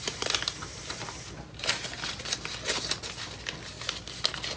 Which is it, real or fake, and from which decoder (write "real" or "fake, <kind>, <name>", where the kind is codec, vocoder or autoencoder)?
real